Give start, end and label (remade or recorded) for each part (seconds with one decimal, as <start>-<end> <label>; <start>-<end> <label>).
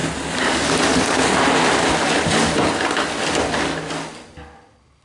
0.0-5.0 recorded